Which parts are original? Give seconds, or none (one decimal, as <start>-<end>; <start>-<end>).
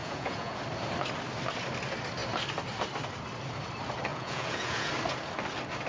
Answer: 0.6-4.1; 4.9-5.9